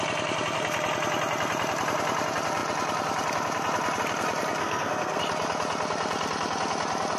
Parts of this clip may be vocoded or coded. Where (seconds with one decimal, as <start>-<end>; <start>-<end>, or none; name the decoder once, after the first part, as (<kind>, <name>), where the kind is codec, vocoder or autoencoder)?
4.6-5.2 (codec, SNAC)